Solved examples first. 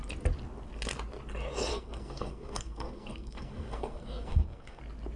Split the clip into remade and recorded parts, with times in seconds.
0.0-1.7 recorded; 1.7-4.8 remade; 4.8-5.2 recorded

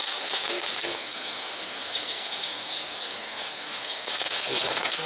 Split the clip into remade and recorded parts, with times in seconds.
0.0-5.1 remade

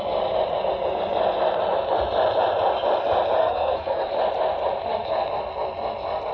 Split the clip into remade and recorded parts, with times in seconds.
0.0-3.4 recorded; 3.4-4.1 remade; 4.1-6.3 recorded